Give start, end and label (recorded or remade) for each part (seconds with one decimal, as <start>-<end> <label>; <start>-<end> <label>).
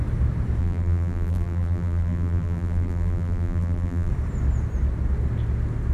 0.0-0.6 recorded; 0.6-4.1 remade; 4.1-5.9 recorded